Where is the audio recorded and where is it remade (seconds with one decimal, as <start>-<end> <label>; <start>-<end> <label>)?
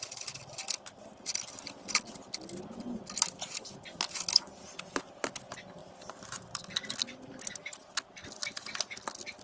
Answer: 0.0-5.8 recorded; 5.8-7.8 remade; 7.8-9.4 recorded